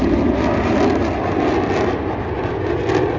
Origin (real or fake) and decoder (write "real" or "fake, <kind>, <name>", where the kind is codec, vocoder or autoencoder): real